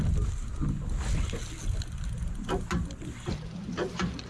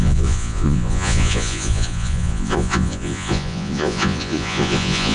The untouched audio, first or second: first